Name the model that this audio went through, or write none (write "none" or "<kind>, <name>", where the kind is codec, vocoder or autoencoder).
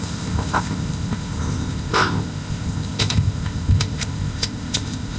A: codec, ZipCodec